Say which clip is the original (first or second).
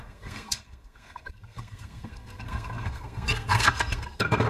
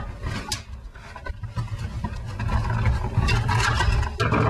second